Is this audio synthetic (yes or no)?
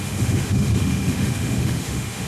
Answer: yes